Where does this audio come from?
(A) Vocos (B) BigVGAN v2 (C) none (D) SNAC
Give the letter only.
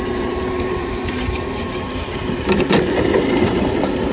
B